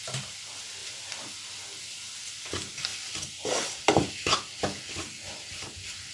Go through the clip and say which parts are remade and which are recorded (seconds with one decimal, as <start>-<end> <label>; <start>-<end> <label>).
0.0-2.9 recorded; 2.9-4.1 remade; 4.1-6.1 recorded